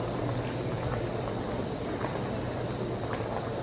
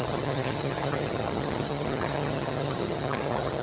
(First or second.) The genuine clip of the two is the first